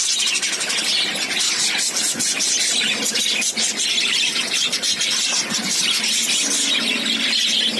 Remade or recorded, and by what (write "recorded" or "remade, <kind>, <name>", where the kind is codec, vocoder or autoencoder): recorded